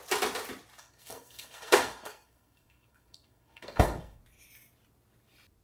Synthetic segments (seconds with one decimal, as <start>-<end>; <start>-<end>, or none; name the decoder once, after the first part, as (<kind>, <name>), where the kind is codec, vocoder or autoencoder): 0.8-4.2 (codec, SNAC)